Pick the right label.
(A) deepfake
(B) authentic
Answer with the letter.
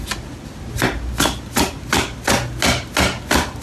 B